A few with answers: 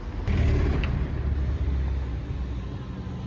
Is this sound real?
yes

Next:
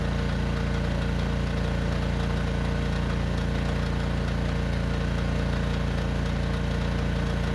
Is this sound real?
yes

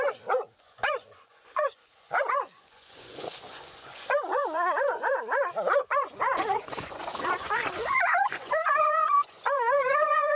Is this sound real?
no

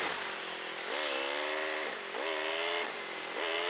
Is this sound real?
yes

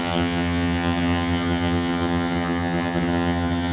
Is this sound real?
no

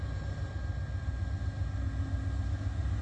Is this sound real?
yes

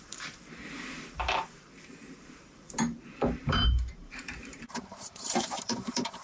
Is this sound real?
no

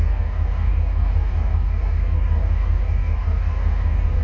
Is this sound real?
no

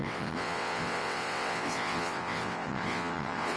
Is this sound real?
no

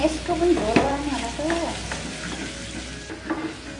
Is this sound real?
yes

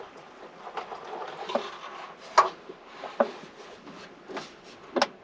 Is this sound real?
yes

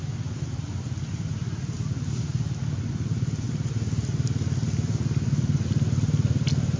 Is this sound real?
yes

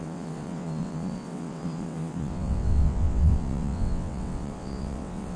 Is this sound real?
no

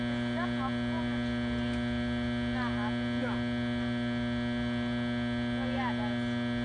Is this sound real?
yes